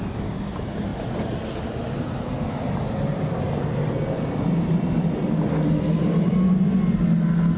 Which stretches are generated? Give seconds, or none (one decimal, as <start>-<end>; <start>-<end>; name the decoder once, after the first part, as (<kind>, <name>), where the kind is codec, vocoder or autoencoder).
none

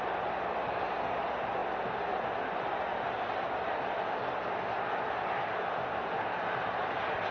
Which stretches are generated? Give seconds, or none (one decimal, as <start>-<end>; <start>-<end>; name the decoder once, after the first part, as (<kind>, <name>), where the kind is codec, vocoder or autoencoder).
none

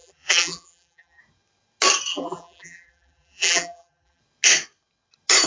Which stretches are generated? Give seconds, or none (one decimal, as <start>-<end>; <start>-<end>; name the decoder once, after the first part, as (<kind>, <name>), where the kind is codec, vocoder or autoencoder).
0.0-1.2 (vocoder, BigVGAN v2); 2.1-4.2

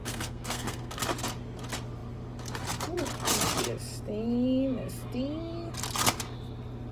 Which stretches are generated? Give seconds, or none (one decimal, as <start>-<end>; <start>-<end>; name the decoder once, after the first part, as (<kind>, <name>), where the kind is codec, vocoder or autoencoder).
0.0-1.0 (codec, SNAC)

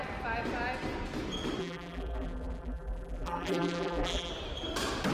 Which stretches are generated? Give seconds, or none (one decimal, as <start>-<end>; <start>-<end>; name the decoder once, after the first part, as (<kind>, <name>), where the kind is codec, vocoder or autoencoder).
1.6-4.3 (vocoder, BigVGAN v2)

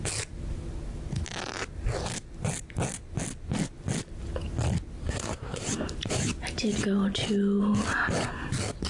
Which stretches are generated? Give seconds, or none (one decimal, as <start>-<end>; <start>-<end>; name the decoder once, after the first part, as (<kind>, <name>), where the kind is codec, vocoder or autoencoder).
5.0-5.6 (codec, SNAC)